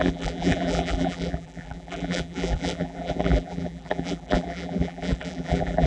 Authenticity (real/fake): fake